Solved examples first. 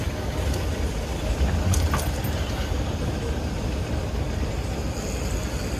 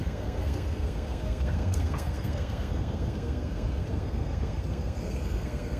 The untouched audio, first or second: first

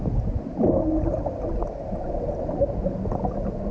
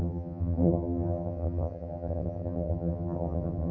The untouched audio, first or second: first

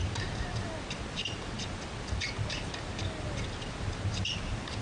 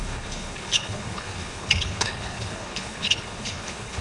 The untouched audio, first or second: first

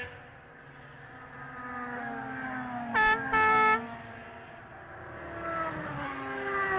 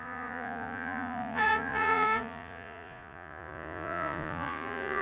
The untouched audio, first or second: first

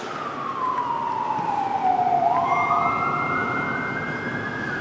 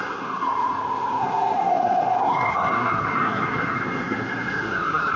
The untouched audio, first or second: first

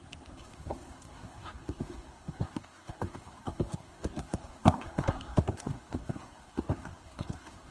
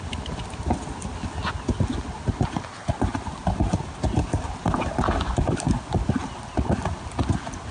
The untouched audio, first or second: second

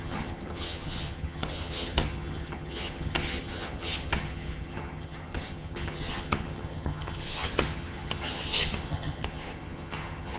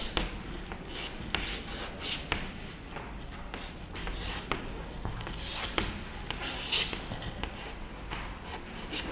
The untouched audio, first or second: second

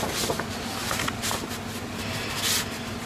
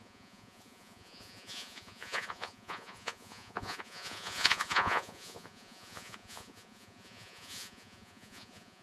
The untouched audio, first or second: first